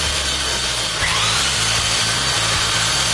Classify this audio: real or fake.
real